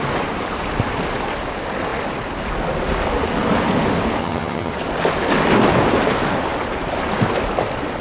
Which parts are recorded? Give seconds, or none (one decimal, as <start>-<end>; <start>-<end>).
0.0-4.2; 4.7-8.0